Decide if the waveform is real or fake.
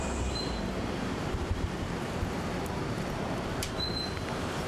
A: fake